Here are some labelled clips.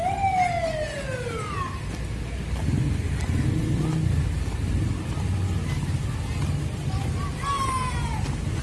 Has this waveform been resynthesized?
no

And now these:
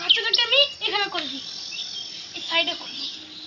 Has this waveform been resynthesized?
no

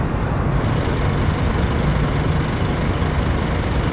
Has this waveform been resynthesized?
no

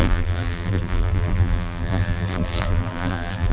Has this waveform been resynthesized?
yes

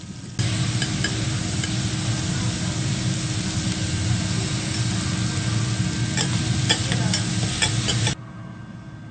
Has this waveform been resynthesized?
no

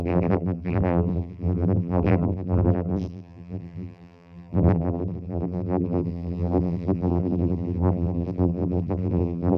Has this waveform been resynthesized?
yes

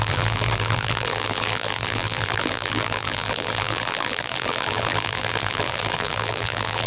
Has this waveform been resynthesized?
yes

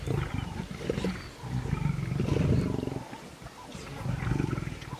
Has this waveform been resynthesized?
no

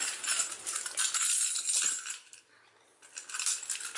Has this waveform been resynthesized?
no